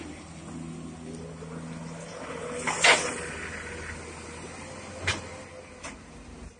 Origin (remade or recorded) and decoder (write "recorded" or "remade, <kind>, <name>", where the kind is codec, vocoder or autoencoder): recorded